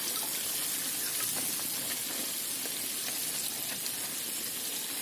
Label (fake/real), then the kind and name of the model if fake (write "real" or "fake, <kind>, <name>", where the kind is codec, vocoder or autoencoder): real